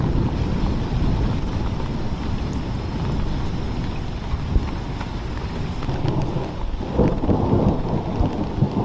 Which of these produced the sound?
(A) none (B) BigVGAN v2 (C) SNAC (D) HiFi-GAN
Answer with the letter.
A